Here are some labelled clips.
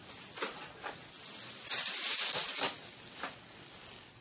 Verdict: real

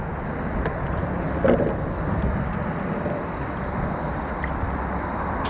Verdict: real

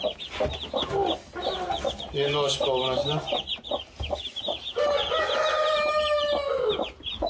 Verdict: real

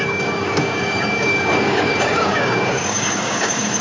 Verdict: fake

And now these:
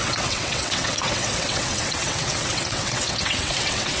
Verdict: fake